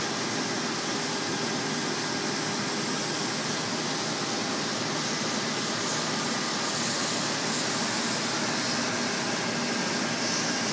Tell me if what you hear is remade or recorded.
recorded